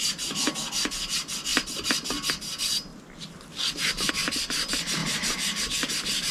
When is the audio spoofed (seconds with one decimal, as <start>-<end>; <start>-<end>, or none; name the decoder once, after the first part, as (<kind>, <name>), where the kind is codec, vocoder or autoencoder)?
1.5-2.3 (vocoder, BigVGAN v2); 2.9-4.1; 5.0-5.6